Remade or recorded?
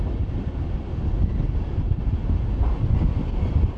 recorded